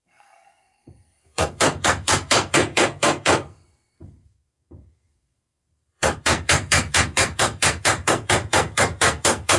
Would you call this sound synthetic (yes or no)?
yes